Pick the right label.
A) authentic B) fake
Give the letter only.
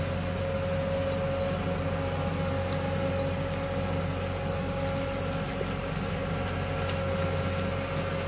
A